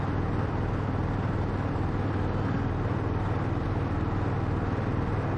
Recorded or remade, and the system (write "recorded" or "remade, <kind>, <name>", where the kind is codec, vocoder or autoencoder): recorded